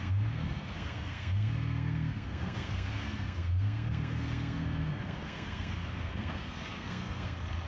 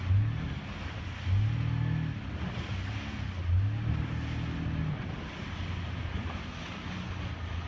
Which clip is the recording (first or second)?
second